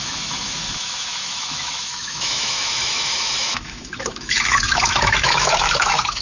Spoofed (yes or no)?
yes